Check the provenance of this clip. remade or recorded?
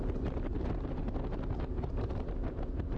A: remade